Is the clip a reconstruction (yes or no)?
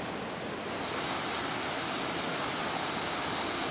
no